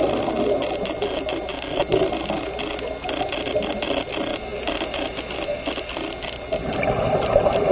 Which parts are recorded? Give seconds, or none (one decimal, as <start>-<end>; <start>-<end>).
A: 0.0-7.7